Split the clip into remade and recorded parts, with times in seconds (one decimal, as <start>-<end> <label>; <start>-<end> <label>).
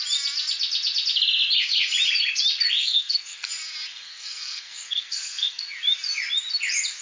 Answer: 0.0-2.8 recorded; 2.8-3.5 remade; 3.5-3.9 recorded; 3.9-5.6 remade; 5.6-7.0 recorded